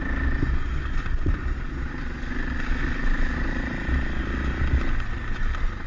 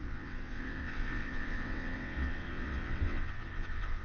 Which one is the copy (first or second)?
second